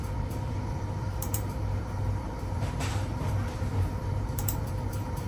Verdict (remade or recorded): remade